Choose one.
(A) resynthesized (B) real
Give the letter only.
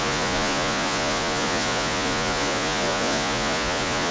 A